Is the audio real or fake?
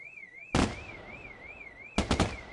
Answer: real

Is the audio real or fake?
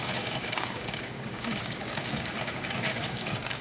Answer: fake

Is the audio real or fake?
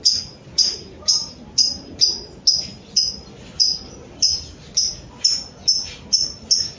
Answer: real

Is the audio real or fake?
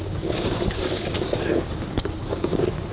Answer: fake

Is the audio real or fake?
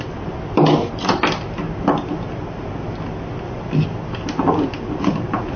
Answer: real